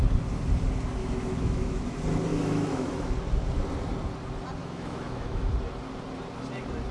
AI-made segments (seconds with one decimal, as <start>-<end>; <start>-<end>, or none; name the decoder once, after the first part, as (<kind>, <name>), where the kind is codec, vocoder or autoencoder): 1.0-1.8 (autoencoder, DAC-VAE); 2.3-3.1; 4.6-5.5